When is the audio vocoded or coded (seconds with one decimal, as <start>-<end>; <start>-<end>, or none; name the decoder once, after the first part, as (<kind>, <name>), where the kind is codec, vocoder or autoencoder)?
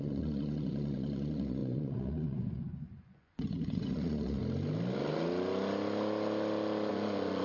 0.0-4.4 (vocoder, Vocos); 6.9-7.4